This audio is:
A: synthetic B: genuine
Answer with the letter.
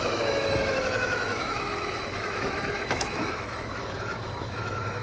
A